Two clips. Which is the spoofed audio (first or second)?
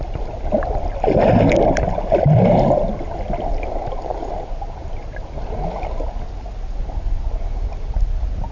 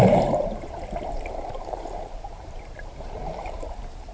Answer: second